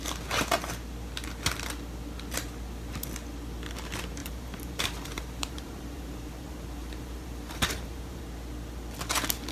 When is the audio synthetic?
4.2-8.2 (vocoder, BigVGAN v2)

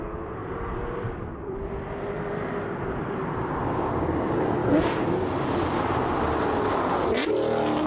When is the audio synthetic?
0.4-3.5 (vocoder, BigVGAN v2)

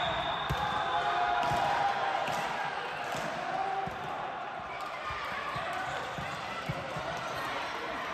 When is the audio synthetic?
3.6-8.1 (vocoder, BigVGAN v2)